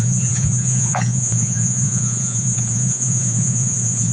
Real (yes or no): no